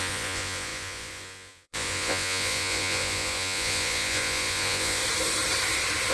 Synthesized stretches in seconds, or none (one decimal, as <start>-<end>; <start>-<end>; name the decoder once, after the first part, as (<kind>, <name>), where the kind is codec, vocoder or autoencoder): 0.0-5.0 (vocoder, Vocos)